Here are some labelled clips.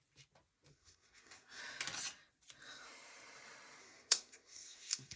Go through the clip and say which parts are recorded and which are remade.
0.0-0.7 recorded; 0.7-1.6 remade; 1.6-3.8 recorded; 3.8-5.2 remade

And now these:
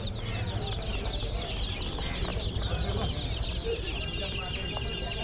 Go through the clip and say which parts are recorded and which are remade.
0.0-5.2 recorded